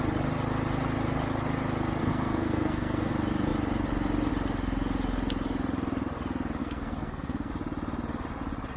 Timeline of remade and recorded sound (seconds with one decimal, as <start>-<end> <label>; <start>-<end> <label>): 0.0-2.0 recorded; 2.0-3.1 remade; 3.1-6.6 recorded; 6.6-7.5 remade; 7.5-8.8 recorded

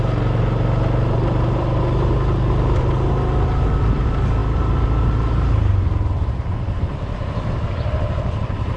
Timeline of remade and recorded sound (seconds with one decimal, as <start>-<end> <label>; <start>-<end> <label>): 0.0-8.8 recorded

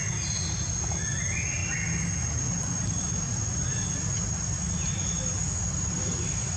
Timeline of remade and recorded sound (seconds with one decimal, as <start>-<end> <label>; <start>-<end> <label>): 0.0-6.6 recorded

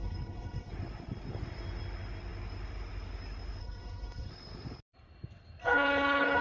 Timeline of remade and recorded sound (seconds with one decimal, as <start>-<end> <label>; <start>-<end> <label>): 0.0-0.7 remade; 0.7-3.6 recorded; 3.6-4.3 remade; 4.3-5.6 recorded; 5.6-6.4 remade

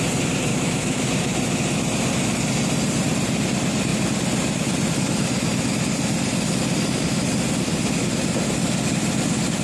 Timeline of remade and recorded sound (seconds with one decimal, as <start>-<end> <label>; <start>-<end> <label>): 0.0-0.5 recorded; 0.5-1.0 remade; 1.0-9.6 recorded

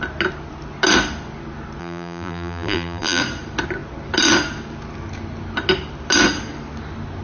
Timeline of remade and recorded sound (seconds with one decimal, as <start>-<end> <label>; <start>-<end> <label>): 0.0-1.8 recorded; 1.8-3.2 remade; 3.2-7.2 recorded